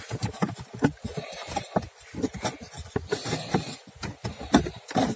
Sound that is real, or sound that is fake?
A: fake